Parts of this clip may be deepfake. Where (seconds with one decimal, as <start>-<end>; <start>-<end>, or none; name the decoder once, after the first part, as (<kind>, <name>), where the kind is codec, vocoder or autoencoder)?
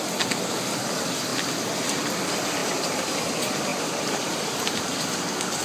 1.3-2.2 (vocoder, BigVGAN v2); 2.6-3.3; 3.7-4.8